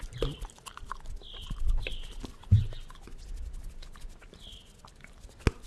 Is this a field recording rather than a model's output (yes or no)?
yes